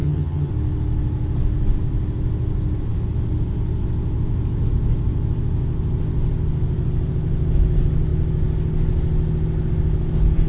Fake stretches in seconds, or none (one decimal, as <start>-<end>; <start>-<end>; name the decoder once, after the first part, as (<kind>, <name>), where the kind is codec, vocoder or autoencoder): 0.0-0.5 (vocoder, HiFi-GAN)